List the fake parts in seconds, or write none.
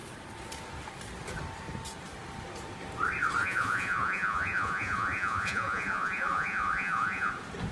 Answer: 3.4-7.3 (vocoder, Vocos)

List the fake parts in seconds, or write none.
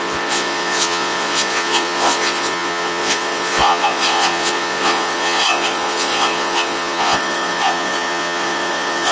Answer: 0.0-9.1 (vocoder, Vocos)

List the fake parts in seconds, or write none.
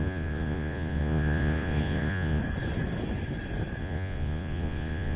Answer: 0.0-2.4 (vocoder, Vocos); 3.8-5.2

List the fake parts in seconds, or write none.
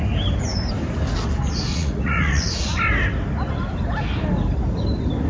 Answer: 1.7-2.8 (vocoder, Vocos)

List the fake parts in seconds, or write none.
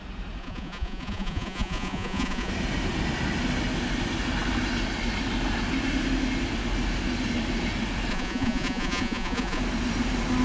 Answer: 0.4-2.5 (vocoder, Vocos); 8.1-9.6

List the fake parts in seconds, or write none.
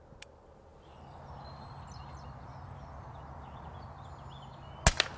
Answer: none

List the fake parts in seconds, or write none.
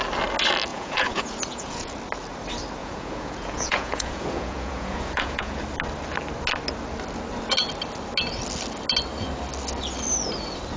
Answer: 0.7-1.9 (vocoder, Vocos); 2.8-5.6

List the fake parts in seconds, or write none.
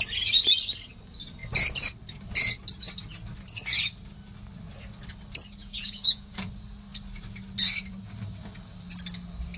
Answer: 5.6-6.5 (vocoder, Vocos)